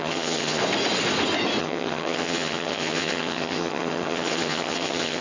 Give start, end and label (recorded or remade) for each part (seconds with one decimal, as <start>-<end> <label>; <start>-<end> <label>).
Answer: 0.0-0.6 remade; 0.6-1.6 recorded; 1.6-5.2 remade